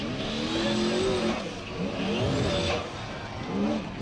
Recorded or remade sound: recorded